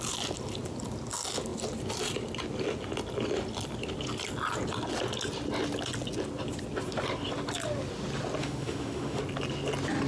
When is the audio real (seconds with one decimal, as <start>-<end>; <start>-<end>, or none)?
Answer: 0.0-8.4; 9.2-10.1